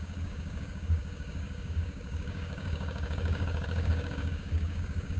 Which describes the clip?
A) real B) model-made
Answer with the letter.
B